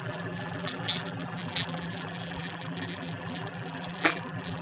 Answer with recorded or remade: remade